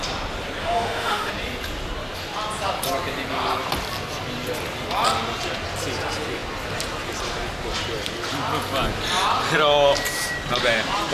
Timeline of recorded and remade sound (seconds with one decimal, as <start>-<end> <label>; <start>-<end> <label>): 0.0-0.6 recorded; 0.6-1.3 remade; 1.3-11.1 recorded